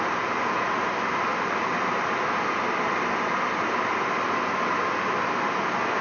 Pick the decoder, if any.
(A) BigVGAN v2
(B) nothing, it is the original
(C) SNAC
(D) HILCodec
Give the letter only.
B